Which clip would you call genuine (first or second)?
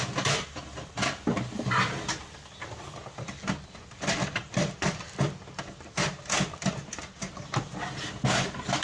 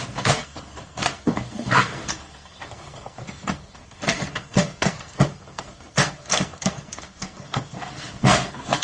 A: first